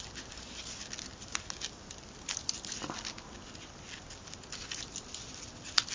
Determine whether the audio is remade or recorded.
recorded